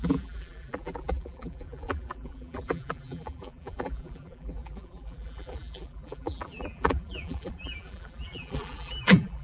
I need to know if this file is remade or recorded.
remade